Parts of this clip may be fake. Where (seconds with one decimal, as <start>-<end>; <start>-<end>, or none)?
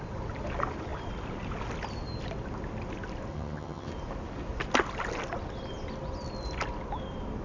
3.3-3.9